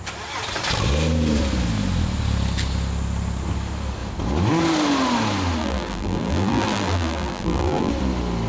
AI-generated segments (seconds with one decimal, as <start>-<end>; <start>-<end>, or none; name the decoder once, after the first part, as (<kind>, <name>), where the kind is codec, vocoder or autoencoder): 5.6-7.9 (vocoder, BigVGAN v2)

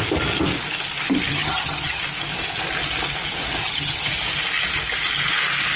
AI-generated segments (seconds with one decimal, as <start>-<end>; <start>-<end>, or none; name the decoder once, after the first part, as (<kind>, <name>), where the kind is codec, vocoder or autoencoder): 1.3-2.0 (vocoder, HiFi-GAN); 3.6-4.1

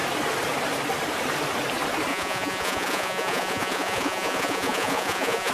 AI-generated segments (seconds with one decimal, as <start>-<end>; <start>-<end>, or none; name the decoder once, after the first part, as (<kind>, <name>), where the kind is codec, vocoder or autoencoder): 2.1-5.5 (vocoder, Vocos)

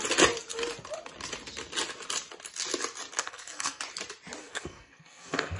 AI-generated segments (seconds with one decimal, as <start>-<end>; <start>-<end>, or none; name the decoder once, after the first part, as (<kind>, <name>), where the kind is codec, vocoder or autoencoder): 3.2-3.8 (codec, SNAC); 4.4-5.6

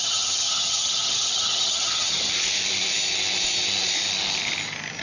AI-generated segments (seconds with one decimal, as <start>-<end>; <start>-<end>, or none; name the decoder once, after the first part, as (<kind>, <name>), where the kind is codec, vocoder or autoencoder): 0.0-2.3 (vocoder, HiFi-GAN)

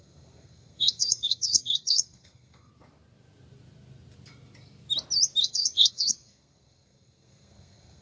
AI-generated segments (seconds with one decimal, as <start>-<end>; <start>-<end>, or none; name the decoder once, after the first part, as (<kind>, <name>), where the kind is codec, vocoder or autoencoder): 0.0-2.7 (codec, SNAC); 5.4-8.0

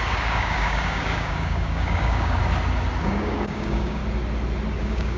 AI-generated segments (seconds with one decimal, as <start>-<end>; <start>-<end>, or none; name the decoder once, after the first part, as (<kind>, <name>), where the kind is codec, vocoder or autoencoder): 0.0-2.4 (codec, DAC); 3.0-4.0; 4.8-5.2

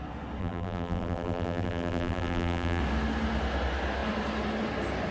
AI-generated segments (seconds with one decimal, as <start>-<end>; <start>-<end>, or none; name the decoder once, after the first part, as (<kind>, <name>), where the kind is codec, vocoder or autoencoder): 0.4-2.8 (vocoder, BigVGAN v2)